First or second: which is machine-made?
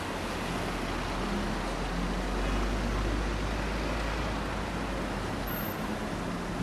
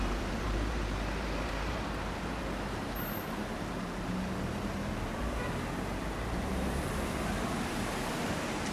second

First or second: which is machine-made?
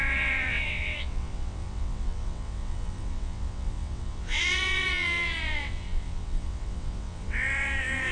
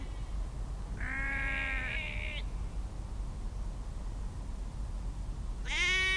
first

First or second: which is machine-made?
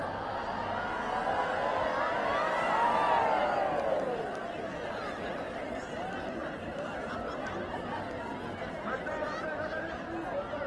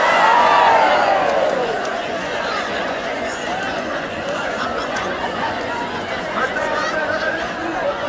second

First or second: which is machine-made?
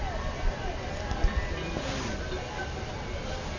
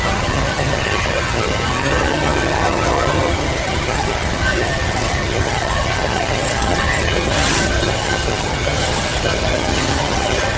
second